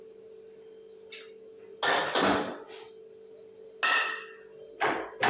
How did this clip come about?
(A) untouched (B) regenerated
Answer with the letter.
A